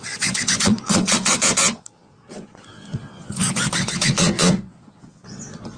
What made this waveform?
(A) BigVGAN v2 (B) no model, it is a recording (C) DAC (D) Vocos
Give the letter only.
D